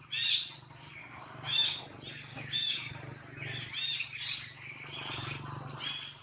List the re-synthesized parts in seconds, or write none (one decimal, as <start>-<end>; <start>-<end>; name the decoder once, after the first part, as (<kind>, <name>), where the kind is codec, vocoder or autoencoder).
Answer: 1.0-1.8 (codec, DAC); 2.3-2.9